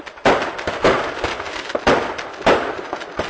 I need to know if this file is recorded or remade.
recorded